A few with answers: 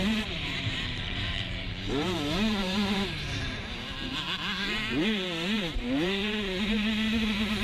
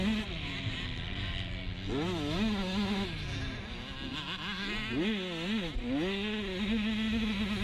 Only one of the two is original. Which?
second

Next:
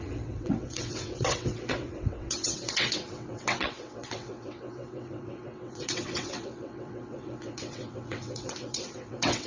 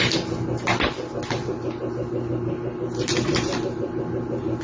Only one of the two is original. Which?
second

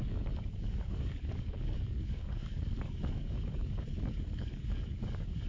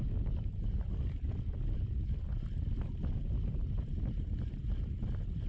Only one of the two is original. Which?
second